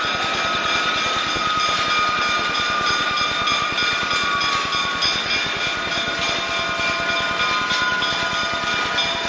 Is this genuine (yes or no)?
yes